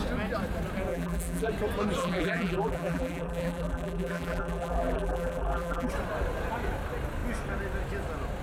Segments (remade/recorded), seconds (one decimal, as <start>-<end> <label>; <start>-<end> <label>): 0.0-0.9 recorded; 0.9-1.5 remade; 1.5-2.0 recorded; 2.0-5.9 remade; 5.9-8.4 recorded